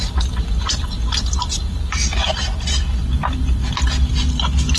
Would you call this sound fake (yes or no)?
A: no